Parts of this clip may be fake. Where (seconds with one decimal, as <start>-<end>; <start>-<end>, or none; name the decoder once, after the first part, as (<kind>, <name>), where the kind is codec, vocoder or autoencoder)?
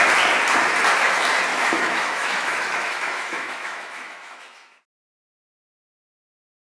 1.5-4.8 (autoencoder, DAC-VAE)